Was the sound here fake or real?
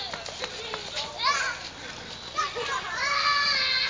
real